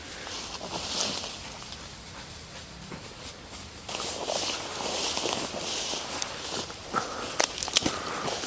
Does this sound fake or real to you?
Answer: real